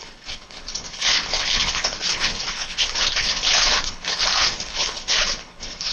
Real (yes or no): no